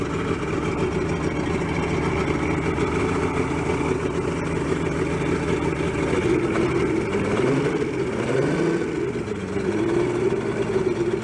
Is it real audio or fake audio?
real